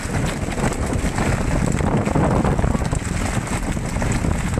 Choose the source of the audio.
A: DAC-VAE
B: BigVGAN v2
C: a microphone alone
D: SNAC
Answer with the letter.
C